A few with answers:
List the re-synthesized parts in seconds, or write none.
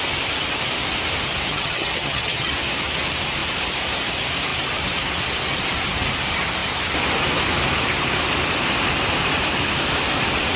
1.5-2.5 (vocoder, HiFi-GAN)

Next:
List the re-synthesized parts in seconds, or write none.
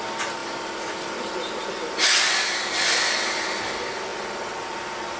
none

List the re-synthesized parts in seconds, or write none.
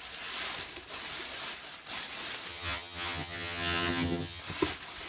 2.5-4.4 (vocoder, HiFi-GAN)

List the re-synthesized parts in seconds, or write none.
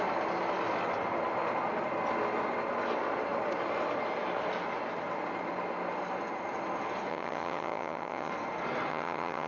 7.1-8.3 (vocoder, HiFi-GAN); 8.9-9.5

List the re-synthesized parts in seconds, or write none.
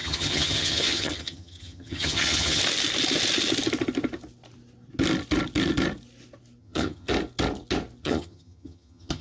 0.0-2.6 (vocoder, HiFi-GAN); 6.6-7.1; 8.0-9.2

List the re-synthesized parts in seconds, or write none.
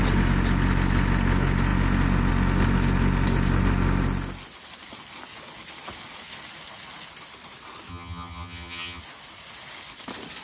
7.9-9.0 (vocoder, HiFi-GAN)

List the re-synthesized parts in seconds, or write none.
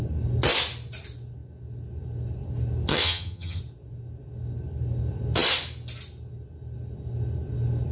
2.9-3.6 (vocoder, HiFi-GAN)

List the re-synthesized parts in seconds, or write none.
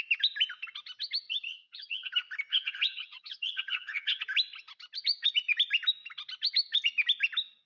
1.5-2.1 (vocoder, HiFi-GAN); 2.5-4.2